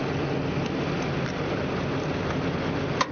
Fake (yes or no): no